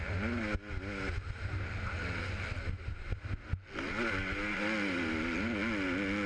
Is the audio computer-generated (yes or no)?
no